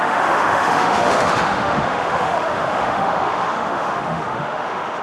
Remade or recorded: remade